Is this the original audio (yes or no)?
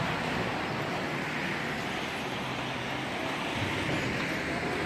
yes